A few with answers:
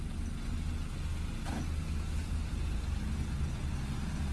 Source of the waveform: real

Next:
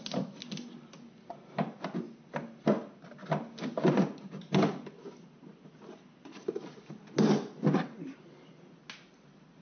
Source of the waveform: real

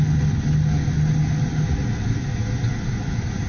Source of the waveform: real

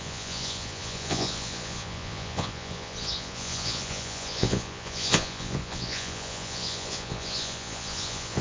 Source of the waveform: fake